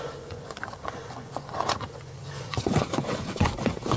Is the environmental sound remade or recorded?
remade